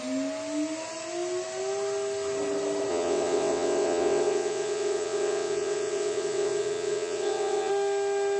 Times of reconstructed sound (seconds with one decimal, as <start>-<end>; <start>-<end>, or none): 2.9-7.7